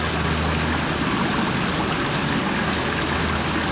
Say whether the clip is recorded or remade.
recorded